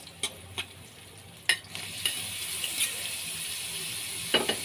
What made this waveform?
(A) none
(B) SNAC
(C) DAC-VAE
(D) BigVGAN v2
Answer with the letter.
A